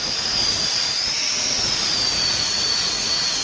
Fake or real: fake